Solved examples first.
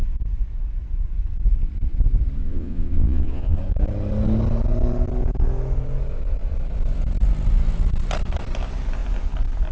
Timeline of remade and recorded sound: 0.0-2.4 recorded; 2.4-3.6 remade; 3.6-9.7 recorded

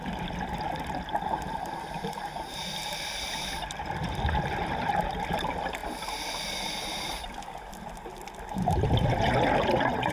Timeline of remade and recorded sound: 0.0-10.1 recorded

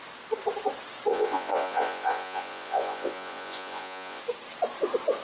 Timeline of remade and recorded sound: 0.0-1.1 recorded; 1.1-4.2 remade; 4.2-5.2 recorded

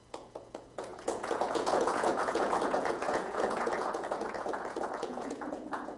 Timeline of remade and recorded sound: 0.0-6.0 remade

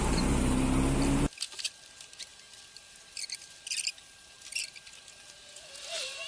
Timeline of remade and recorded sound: 0.0-6.3 recorded

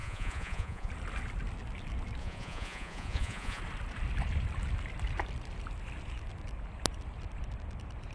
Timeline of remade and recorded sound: 0.0-0.9 remade; 0.9-2.2 recorded; 2.2-3.6 remade; 3.6-8.1 recorded